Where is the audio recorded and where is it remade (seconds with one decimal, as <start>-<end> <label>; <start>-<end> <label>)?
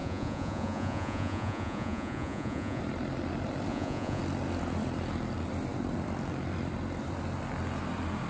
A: 0.0-2.8 remade; 2.8-3.7 recorded; 3.7-4.2 remade; 4.2-8.3 recorded